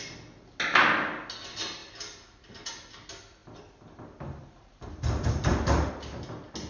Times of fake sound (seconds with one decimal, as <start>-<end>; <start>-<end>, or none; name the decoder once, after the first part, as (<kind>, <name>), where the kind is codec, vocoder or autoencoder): 1.8-2.7 (vocoder, BigVGAN v2); 3.4-5.9

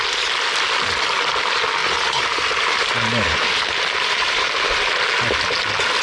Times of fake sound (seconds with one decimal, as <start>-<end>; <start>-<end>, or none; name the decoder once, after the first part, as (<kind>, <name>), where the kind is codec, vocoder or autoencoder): 1.8-5.0 (vocoder, BigVGAN v2)